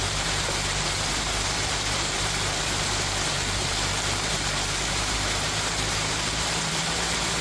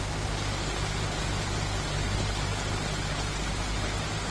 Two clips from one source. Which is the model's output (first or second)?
first